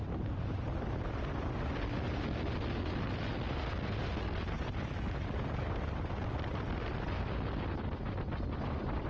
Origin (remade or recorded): recorded